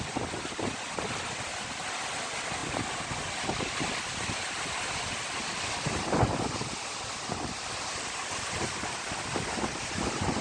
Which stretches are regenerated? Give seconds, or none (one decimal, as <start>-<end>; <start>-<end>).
none